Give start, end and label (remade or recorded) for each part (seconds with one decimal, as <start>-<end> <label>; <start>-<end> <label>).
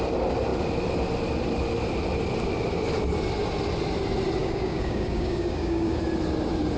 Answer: 0.0-4.4 recorded; 4.4-6.0 remade; 6.0-6.8 recorded